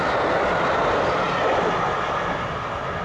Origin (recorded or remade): recorded